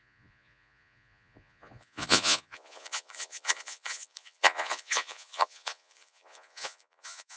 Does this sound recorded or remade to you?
remade